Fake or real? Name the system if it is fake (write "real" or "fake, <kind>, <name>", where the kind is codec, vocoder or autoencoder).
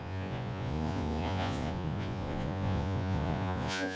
fake, vocoder, Vocos